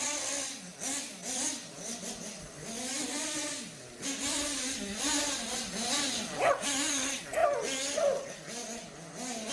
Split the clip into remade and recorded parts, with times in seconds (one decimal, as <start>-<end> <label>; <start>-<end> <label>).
0.0-9.5 recorded